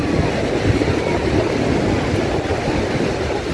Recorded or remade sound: recorded